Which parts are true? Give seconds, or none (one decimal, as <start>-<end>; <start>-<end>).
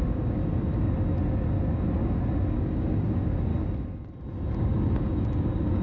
0.4-2.5; 3.5-4.6